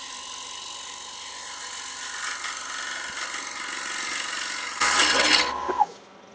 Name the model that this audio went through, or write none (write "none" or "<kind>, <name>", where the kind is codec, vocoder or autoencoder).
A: none